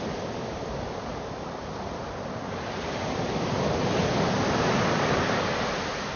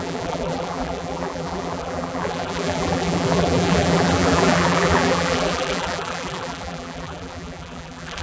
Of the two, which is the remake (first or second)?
second